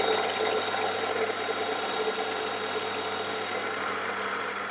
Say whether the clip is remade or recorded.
recorded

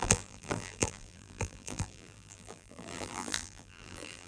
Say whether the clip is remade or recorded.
remade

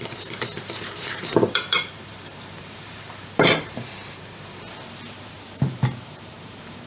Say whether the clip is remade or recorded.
remade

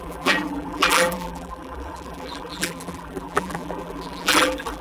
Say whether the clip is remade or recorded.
remade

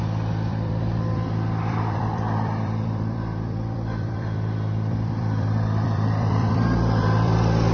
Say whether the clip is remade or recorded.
remade